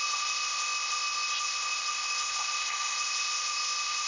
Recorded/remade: remade